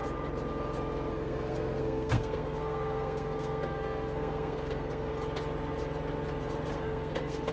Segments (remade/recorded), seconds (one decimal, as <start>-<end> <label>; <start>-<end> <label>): 0.0-1.1 recorded; 1.1-5.1 remade; 5.1-6.7 recorded; 6.7-7.5 remade